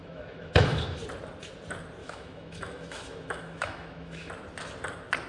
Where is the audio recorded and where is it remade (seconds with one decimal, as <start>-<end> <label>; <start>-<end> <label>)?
0.0-1.0 remade; 1.0-2.0 recorded; 2.0-4.3 remade; 4.3-5.3 recorded